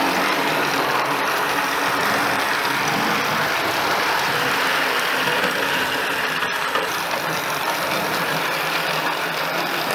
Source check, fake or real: fake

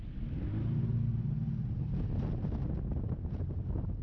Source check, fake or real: real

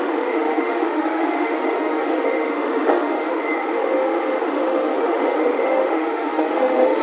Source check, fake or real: fake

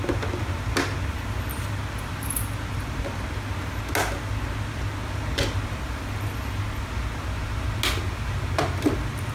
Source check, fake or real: real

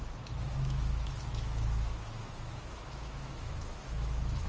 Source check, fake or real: fake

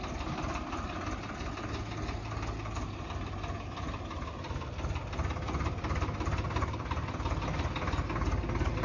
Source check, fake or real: real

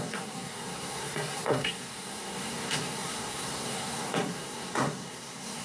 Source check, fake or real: fake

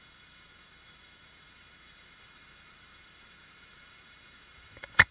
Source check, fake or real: fake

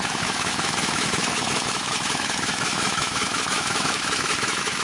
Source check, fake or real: fake